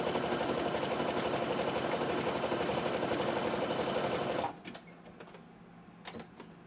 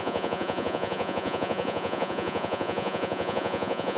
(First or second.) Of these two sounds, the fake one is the second